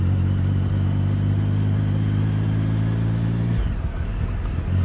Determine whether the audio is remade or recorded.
recorded